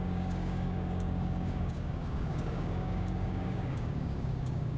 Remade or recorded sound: remade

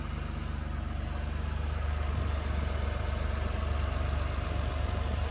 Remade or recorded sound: recorded